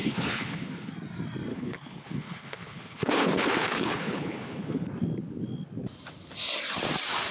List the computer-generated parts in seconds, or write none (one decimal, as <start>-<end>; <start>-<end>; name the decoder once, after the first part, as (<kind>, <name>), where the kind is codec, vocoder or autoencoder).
0.0-0.9 (codec, HILCodec); 1.5-4.9